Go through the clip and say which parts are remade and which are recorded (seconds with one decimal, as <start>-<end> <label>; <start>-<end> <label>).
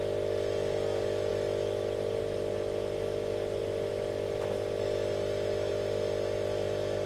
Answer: 0.0-7.1 recorded